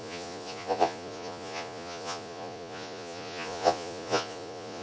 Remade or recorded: remade